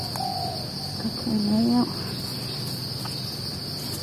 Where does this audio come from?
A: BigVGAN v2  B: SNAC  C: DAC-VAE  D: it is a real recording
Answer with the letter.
D